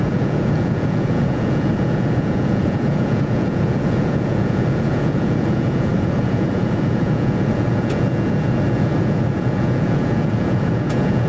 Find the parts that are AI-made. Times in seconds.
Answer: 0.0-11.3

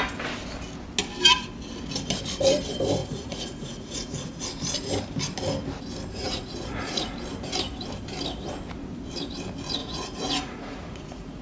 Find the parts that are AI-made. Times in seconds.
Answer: 3.0-4.4; 6.2-7.1; 9.8-11.4

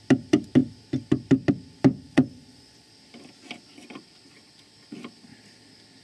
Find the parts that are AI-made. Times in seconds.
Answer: 1.9-2.9

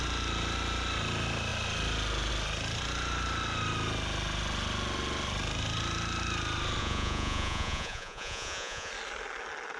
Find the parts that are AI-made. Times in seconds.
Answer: 6.8-8.9

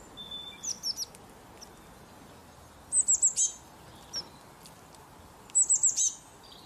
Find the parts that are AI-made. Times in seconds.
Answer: none

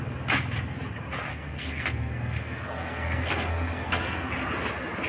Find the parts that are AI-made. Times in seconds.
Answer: 1.3-4.3

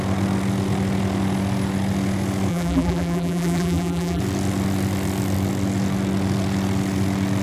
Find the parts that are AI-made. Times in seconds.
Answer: 2.5-4.2